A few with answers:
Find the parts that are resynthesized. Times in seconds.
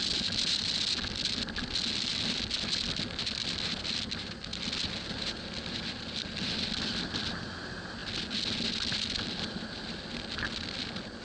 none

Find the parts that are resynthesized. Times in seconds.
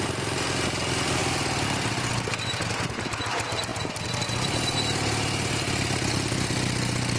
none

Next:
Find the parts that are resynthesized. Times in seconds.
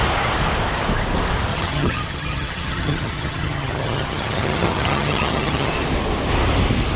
1.5-5.7 (vocoder, HiFi-GAN)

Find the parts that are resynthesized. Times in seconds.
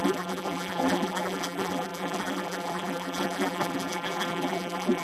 0.0-5.0 (vocoder, BigVGAN v2)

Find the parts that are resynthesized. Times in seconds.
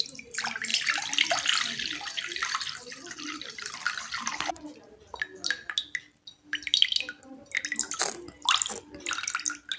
none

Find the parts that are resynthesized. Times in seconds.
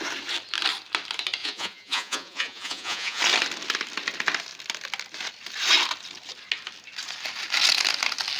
1.4-3.2 (vocoder, Vocos)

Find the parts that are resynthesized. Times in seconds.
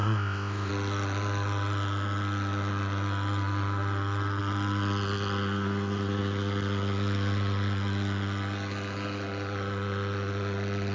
0.0-0.7 (codec, ZipCodec)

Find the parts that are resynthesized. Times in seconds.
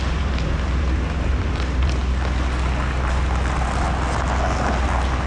0.0-2.0 (vocoder, BigVGAN v2)